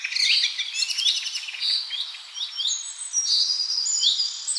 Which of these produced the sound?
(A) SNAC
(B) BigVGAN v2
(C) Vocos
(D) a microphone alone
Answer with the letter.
B